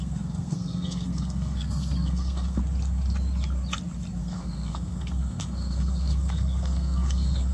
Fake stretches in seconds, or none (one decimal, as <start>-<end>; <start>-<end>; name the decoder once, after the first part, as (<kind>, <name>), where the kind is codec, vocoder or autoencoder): 0.0-2.6 (codec, SNAC); 4.2-7.5